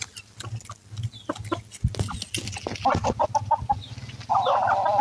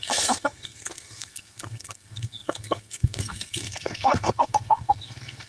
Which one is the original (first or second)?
first